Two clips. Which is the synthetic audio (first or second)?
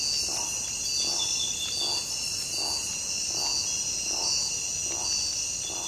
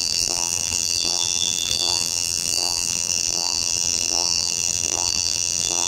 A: second